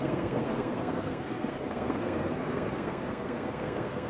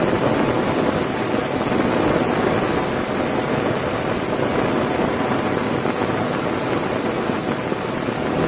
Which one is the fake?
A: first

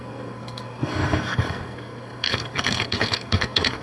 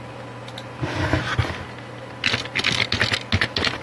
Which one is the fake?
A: first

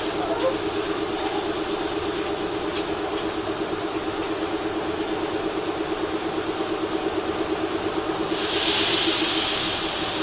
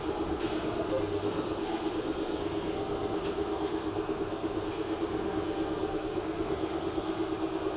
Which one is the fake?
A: second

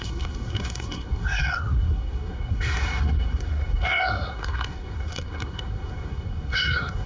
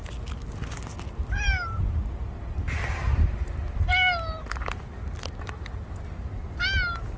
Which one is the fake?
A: first